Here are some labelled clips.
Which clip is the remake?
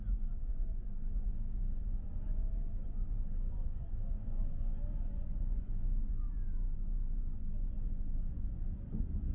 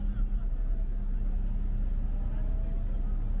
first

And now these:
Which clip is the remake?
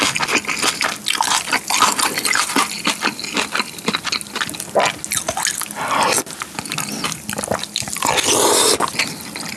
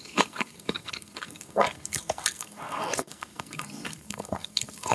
second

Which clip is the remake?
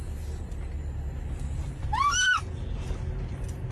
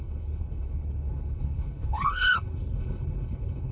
second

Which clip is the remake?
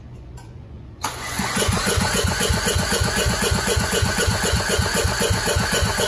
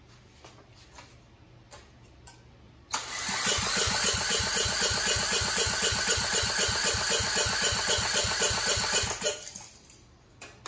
first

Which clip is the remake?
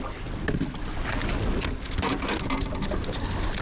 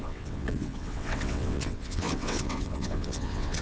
second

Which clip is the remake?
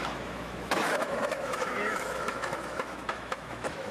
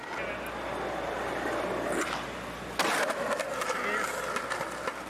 first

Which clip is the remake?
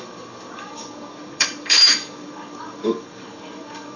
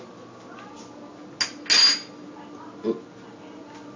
first